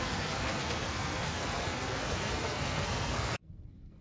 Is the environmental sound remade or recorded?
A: remade